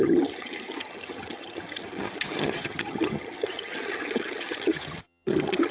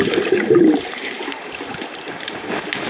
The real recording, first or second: second